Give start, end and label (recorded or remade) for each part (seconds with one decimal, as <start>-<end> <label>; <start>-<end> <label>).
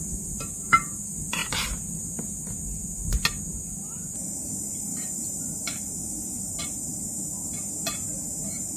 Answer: 0.0-1.4 remade; 1.4-4.1 recorded; 4.1-7.4 remade; 7.4-8.2 recorded; 8.2-8.8 remade